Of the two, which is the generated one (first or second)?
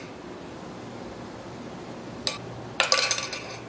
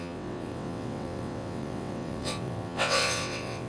second